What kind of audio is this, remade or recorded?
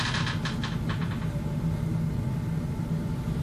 recorded